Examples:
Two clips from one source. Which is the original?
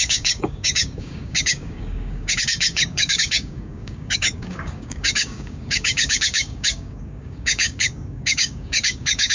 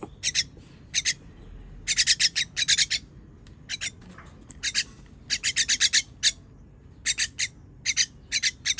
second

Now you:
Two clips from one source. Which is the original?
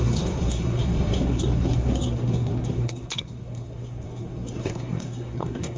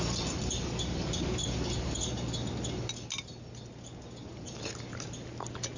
second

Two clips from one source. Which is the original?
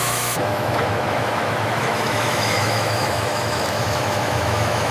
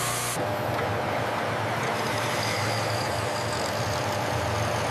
second